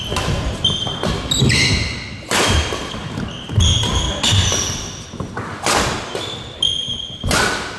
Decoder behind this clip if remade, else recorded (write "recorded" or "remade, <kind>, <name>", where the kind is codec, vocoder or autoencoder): recorded